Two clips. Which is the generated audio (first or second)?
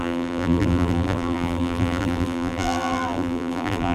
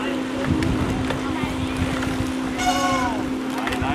first